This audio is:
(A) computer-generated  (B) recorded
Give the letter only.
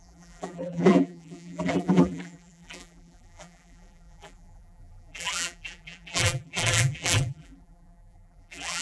A